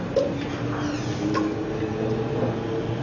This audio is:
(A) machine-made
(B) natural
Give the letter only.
B